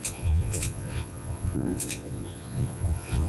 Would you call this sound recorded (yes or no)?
no